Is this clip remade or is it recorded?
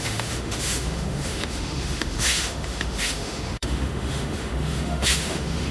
remade